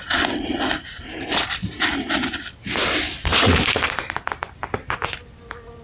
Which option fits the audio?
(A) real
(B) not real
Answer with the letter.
A